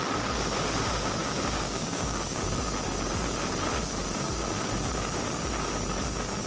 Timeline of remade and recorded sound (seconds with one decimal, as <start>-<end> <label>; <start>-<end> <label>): 0.0-1.2 recorded; 1.2-2.4 remade; 2.4-6.5 recorded